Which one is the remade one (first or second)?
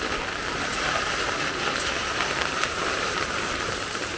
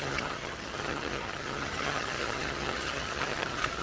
second